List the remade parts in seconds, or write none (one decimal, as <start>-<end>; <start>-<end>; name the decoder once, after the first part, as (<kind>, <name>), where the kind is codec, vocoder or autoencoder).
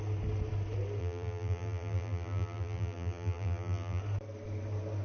1.0-4.0 (vocoder, BigVGAN v2)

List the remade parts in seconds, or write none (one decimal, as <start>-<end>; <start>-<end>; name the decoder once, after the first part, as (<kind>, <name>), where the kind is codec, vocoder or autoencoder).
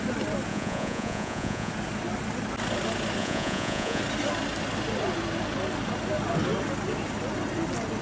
0.5-1.7 (vocoder, Vocos); 3.2-4.0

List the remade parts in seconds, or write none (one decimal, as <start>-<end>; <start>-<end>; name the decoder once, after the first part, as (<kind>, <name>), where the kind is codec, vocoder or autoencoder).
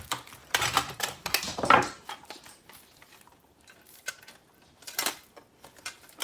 0.4-4.1 (vocoder, BigVGAN v2)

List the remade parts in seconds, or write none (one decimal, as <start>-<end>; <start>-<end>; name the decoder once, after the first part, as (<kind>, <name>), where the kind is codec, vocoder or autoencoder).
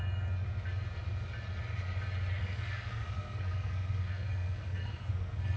2.4-5.6 (codec, SNAC)